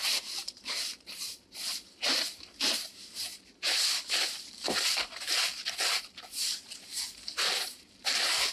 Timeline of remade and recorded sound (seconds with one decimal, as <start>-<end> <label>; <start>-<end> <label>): 0.0-5.5 remade; 5.5-6.0 recorded; 6.0-8.5 remade